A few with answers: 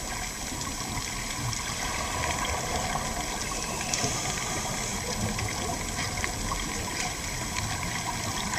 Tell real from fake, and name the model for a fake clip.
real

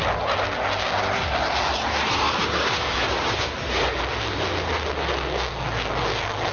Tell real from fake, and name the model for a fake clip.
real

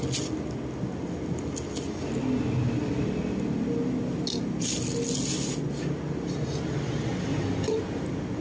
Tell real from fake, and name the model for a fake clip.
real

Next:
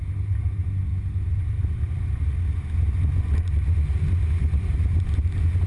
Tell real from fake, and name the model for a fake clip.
real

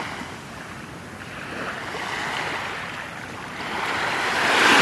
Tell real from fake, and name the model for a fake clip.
real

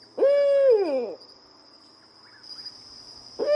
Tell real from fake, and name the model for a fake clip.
real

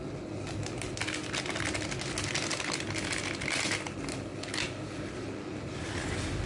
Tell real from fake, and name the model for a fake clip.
real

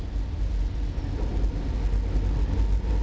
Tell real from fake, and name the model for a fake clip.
real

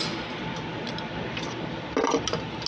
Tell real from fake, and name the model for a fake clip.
real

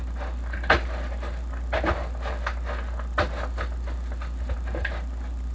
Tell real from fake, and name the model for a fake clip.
real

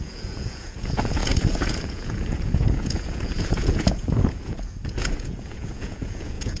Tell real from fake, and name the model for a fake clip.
fake, vocoder, Vocos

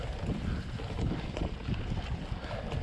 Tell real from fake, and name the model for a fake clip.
real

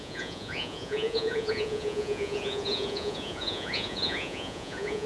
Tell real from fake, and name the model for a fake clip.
fake, vocoder, Vocos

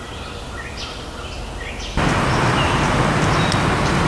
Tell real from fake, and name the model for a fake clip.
real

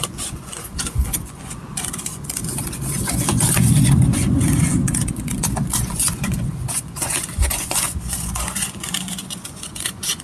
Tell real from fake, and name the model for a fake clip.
fake, vocoder, Vocos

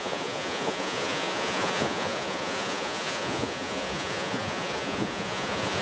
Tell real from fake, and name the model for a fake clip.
fake, vocoder, Vocos